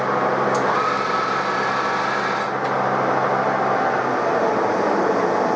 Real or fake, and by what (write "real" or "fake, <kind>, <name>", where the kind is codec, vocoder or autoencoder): real